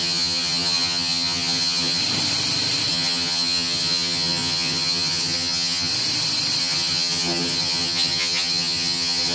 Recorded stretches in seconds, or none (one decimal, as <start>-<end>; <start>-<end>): 2.0-2.9; 5.9-6.6